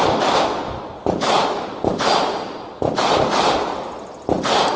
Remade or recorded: recorded